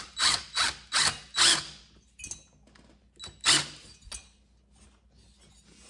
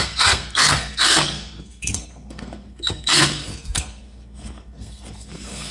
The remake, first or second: second